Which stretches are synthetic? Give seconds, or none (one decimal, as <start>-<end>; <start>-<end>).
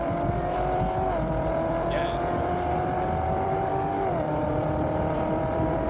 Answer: 0.0-5.9